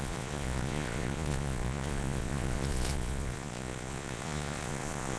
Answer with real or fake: fake